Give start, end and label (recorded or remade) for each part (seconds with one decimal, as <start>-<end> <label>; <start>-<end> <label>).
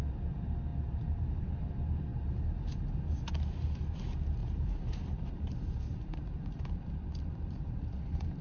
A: 0.0-0.7 recorded; 0.7-1.3 remade; 1.3-4.4 recorded; 4.4-8.0 remade; 8.0-8.4 recorded